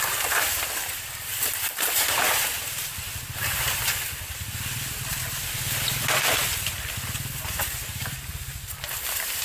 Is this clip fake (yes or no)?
yes